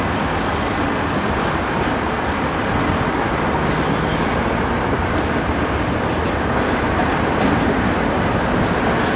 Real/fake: real